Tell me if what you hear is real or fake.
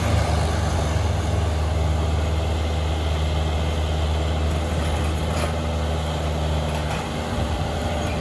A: real